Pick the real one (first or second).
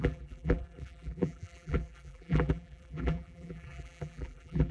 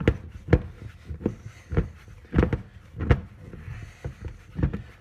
second